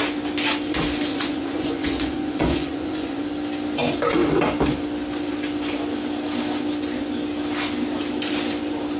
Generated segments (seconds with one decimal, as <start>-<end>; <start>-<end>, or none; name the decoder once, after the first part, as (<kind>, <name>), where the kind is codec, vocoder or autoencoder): 1.1-3.2 (vocoder, Vocos)